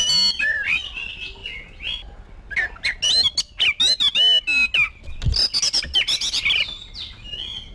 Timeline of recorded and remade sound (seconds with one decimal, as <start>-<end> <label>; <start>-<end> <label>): 0.0-7.7 recorded